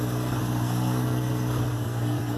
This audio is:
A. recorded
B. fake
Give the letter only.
B